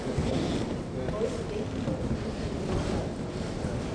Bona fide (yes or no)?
yes